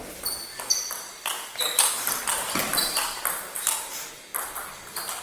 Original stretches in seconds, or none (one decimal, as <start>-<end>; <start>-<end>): 0.0-5.2